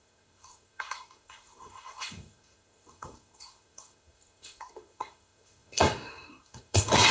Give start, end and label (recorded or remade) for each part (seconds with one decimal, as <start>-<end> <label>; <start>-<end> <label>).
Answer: 0.0-7.1 remade